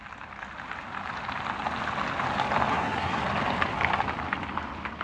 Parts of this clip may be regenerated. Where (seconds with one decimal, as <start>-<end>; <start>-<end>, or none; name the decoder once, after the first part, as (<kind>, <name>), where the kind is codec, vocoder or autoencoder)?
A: 2.7-3.2 (codec, SNAC)